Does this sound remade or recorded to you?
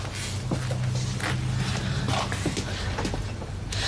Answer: recorded